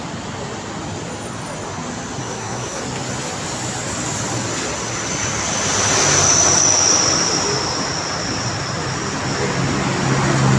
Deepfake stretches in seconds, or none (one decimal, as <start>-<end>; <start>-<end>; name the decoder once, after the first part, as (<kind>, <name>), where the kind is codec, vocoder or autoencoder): 2.2-2.8 (codec, SNAC)